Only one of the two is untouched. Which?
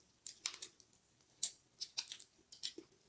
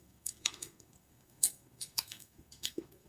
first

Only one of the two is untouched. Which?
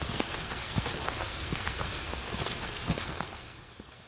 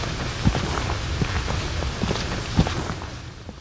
second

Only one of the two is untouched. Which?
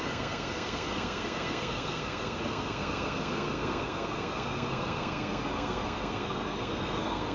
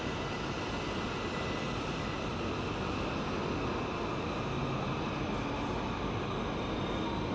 second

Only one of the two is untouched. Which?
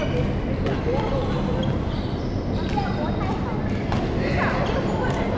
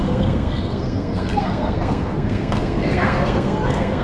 first